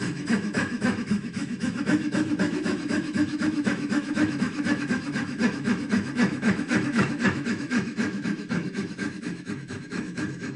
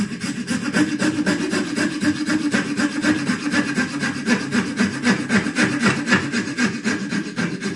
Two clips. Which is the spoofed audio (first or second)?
first